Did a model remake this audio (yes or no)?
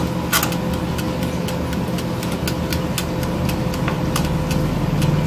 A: no